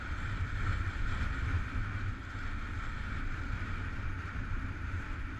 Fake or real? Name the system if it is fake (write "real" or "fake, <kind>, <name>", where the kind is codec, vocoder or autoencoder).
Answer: real